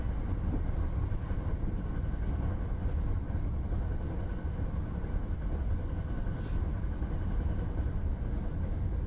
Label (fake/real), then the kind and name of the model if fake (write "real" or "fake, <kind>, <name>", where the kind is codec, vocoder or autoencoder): real